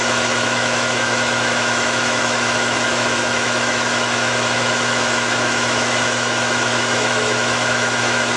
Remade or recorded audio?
remade